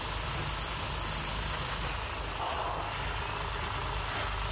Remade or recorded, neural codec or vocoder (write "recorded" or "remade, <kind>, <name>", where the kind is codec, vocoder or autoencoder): recorded